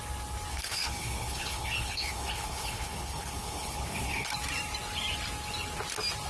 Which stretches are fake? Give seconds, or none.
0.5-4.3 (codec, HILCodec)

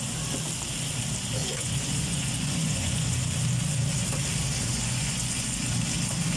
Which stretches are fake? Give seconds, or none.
1.4-3.2 (vocoder, Vocos); 4.7-5.6

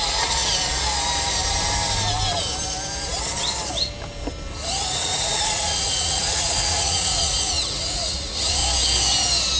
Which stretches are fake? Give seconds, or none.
0.0-0.4 (vocoder, Vocos); 4.7-8.6

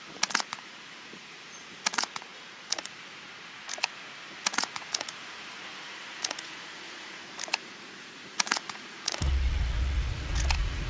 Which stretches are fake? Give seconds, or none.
0.0-10.9 (vocoder, Vocos)